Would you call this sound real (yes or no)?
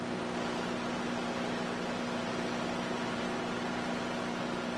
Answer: yes